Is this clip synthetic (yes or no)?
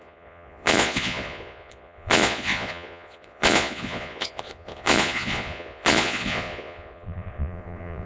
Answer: yes